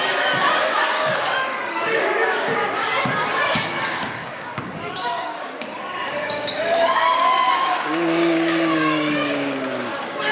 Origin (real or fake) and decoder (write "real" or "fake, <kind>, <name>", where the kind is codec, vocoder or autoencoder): fake, codec, DAC